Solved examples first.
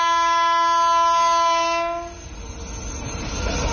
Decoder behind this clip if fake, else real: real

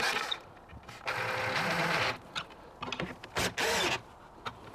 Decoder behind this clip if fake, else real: real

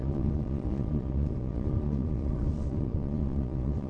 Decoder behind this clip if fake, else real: fake, vocoder, Vocos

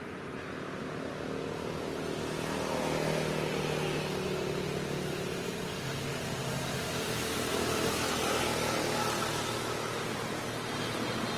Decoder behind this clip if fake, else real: real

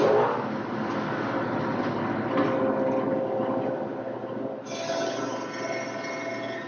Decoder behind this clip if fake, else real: real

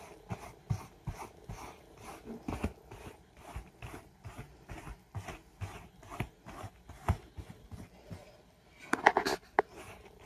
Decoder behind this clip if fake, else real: real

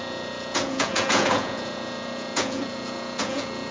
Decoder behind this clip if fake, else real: fake, vocoder, Vocos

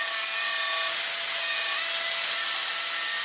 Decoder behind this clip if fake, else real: real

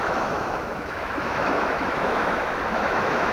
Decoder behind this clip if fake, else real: fake, autoencoder, DAC-VAE